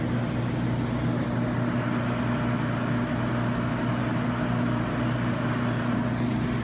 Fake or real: real